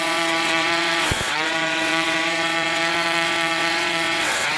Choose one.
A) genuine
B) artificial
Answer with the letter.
B